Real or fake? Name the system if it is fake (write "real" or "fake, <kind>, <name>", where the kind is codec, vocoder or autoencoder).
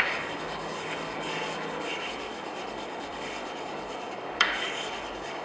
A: fake, codec, DAC